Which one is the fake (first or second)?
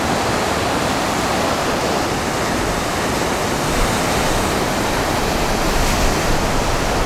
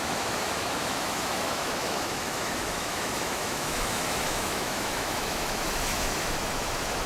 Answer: second